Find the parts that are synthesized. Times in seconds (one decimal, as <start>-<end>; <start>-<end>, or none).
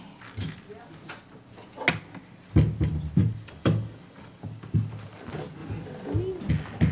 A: 3.2-4.4